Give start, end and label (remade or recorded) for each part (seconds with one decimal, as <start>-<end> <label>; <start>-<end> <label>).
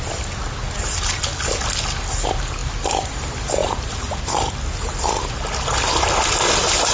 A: 0.0-6.9 recorded